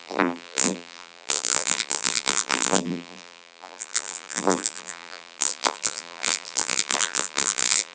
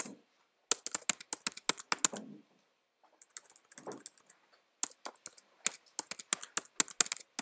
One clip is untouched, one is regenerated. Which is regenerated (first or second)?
first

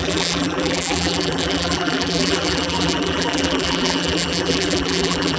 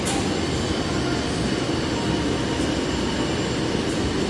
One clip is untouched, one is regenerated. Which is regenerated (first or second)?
first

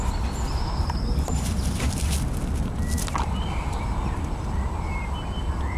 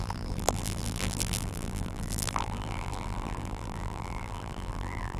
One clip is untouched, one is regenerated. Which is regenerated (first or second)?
second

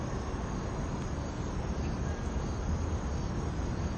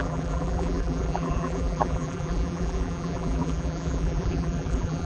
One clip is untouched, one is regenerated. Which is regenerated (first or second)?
second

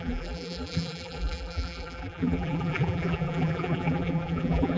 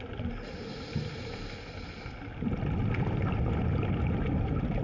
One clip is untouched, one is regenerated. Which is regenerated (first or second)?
first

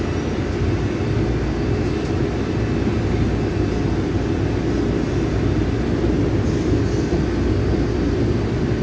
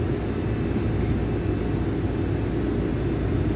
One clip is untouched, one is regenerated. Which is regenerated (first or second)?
first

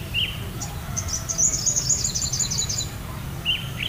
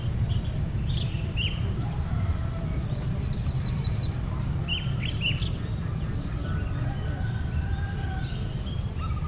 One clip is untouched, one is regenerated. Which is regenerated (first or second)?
second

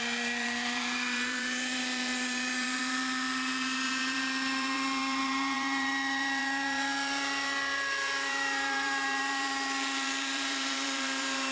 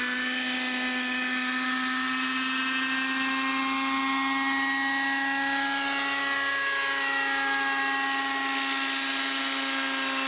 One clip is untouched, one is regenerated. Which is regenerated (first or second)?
first